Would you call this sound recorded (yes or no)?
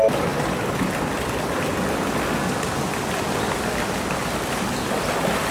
yes